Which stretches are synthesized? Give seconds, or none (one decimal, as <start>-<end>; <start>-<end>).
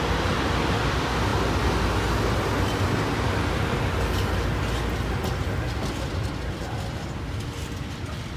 none